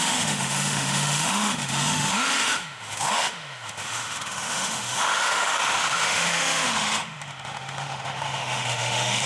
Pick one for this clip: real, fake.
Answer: fake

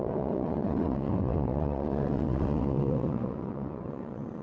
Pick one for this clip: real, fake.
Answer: fake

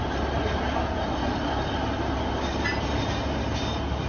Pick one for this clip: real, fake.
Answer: real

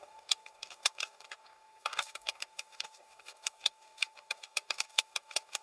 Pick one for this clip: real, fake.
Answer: fake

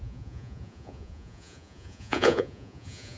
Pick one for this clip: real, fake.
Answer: fake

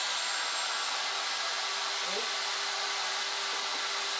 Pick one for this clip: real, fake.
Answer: fake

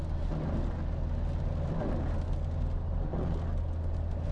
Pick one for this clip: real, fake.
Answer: real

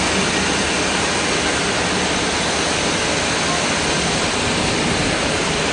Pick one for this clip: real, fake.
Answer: real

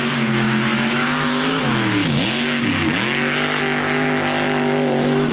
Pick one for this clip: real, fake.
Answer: fake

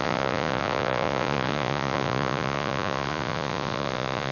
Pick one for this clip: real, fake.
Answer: fake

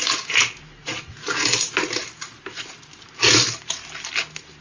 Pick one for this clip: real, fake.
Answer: real